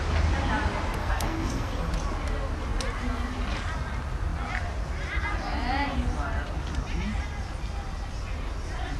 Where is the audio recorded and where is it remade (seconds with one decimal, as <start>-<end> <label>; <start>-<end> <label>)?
0.0-1.0 recorded; 1.0-1.9 remade; 1.9-9.0 recorded